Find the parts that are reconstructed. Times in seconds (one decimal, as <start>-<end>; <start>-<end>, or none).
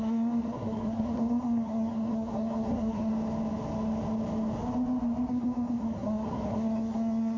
0.0-3.1; 5.3-7.4